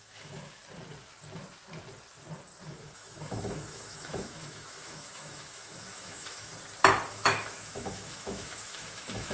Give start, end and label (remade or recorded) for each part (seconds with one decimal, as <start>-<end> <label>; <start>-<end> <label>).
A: 0.0-0.6 remade; 0.6-2.7 recorded; 2.7-6.5 remade; 6.5-7.1 recorded; 7.1-9.3 remade